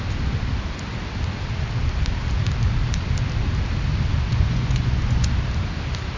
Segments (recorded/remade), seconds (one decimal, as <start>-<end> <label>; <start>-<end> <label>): 0.0-4.3 recorded; 4.3-5.3 remade; 5.3-6.2 recorded